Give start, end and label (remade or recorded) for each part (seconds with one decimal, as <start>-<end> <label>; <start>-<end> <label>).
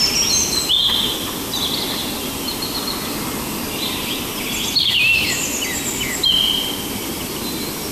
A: 0.0-7.9 recorded